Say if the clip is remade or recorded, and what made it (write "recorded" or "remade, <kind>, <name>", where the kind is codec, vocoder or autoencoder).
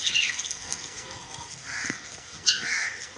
remade, codec, SNAC